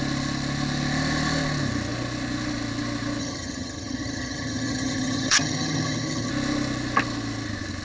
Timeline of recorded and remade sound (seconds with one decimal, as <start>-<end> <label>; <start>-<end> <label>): 0.0-3.2 recorded; 3.2-6.3 remade; 6.3-7.8 recorded